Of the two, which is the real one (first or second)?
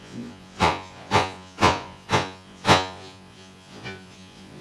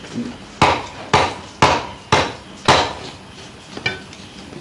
second